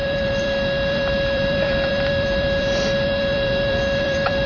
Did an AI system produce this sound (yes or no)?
yes